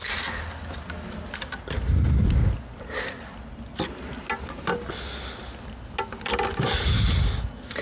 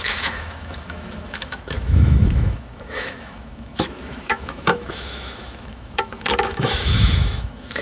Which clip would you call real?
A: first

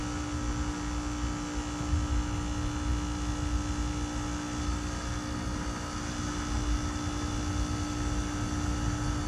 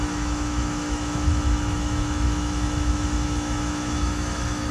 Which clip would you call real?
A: first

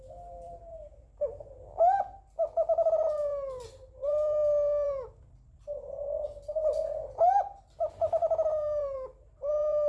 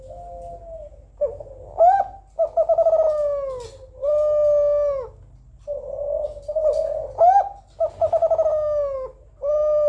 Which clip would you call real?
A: second